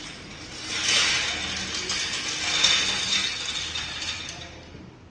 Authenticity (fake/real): real